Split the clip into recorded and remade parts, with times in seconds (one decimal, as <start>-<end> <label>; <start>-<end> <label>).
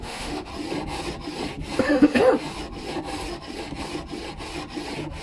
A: 0.0-0.5 remade; 0.5-1.8 recorded; 1.8-2.2 remade; 2.2-5.2 recorded